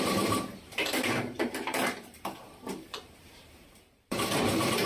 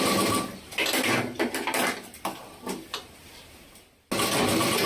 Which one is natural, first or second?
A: second